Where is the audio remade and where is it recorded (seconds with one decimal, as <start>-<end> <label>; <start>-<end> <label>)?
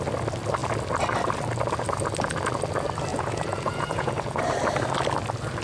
0.0-3.1 recorded; 3.1-4.4 remade; 4.4-5.6 recorded